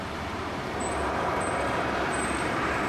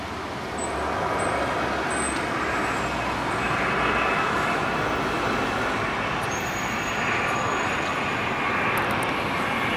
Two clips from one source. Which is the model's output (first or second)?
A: first